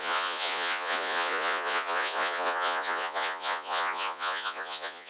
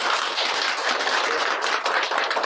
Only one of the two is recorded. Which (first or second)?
second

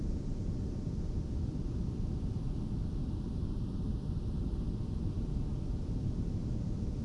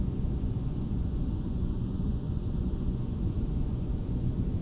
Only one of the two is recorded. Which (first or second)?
first